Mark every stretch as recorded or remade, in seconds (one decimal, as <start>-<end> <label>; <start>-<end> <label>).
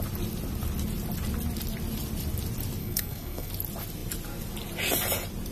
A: 0.0-2.8 recorded; 2.8-3.5 remade; 3.5-5.5 recorded